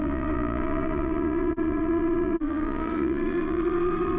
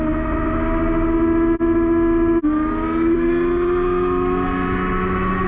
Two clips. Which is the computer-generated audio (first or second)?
first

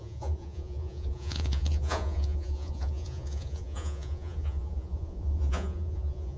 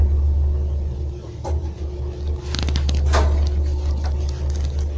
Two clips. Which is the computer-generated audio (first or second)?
first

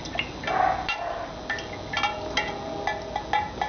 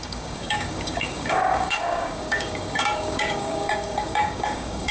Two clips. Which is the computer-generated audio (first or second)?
second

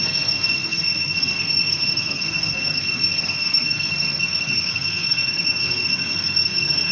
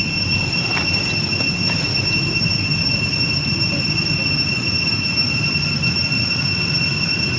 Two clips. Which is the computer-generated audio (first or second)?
first